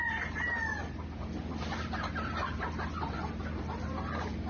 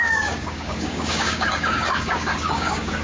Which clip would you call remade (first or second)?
second